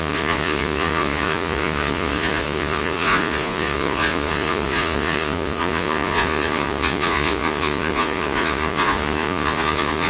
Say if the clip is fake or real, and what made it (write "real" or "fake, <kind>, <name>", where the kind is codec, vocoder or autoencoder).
fake, vocoder, Vocos